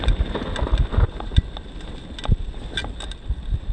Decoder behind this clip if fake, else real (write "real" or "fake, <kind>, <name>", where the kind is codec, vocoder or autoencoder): real